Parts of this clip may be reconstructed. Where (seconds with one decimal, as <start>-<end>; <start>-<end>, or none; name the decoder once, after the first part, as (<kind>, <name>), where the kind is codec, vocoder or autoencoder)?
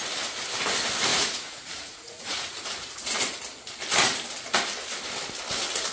1.1-3.4 (vocoder, Vocos)